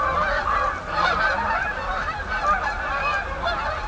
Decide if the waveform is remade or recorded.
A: recorded